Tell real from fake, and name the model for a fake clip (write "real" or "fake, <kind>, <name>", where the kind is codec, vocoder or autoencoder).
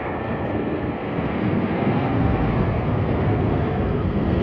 fake, codec, SNAC